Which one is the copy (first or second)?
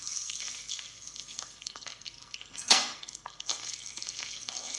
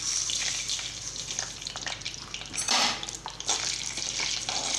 first